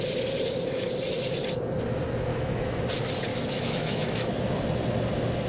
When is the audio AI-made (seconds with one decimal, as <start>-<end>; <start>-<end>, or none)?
2.3-2.8; 3.3-4.5